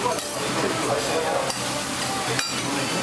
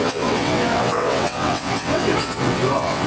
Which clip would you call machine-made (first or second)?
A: second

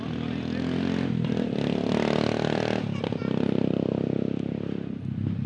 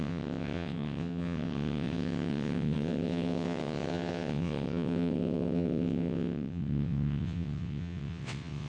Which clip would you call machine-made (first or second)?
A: second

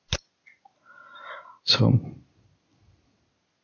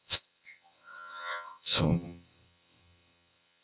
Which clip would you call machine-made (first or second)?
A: second